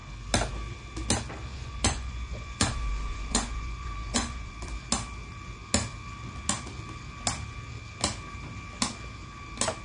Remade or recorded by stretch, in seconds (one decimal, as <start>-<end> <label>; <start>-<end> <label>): 0.0-1.5 recorded; 1.5-4.5 remade; 4.5-9.8 recorded

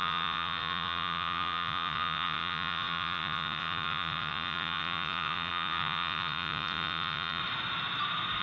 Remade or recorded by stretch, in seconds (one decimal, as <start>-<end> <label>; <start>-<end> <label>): 0.0-7.4 remade; 7.4-8.4 recorded

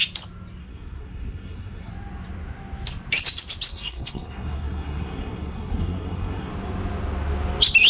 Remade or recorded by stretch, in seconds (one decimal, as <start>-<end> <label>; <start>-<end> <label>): 0.0-0.6 recorded; 0.6-1.9 remade; 1.9-3.7 recorded; 3.7-6.5 remade; 6.5-7.9 recorded

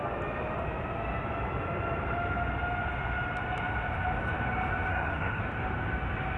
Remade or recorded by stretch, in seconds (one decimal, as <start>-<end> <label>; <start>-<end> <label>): 0.0-4.9 recorded; 4.9-5.4 remade; 5.4-6.4 recorded

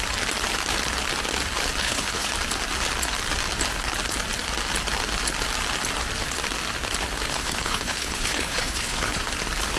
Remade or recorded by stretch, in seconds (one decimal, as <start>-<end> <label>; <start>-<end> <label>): 0.0-1.8 recorded; 1.8-2.3 remade; 2.3-7.3 recorded; 7.3-9.2 remade; 9.2-9.8 recorded

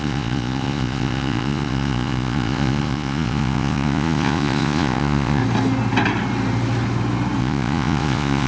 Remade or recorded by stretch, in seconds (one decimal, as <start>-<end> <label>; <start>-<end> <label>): 0.0-5.4 remade; 5.4-7.4 recorded; 7.4-8.5 remade

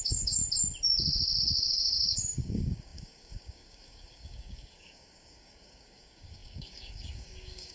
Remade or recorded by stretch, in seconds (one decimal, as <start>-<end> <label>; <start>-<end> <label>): 0.0-0.4 remade; 0.4-1.4 recorded; 1.4-7.7 remade